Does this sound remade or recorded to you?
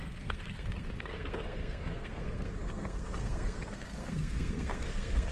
remade